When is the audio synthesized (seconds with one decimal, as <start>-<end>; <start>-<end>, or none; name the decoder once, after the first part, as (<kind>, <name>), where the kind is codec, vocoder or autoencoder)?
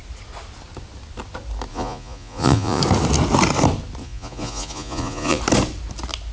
1.7-2.8 (vocoder, Vocos); 4.0-5.4